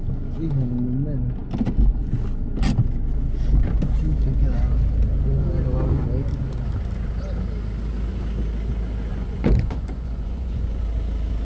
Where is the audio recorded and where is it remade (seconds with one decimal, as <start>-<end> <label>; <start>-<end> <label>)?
0.0-9.1 recorded; 9.1-10.8 remade; 10.8-11.4 recorded